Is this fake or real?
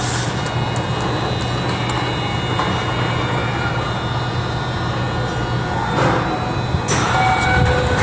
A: real